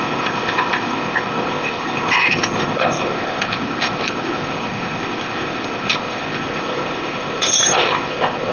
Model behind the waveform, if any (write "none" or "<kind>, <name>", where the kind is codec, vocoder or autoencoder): codec, ZipCodec